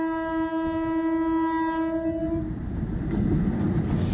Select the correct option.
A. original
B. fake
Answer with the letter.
A